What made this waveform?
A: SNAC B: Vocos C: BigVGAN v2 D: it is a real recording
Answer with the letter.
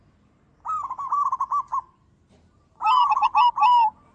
D